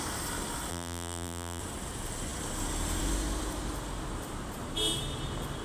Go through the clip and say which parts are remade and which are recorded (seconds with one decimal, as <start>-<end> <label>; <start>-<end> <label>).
0.0-0.7 recorded; 0.7-1.6 remade; 1.6-5.6 recorded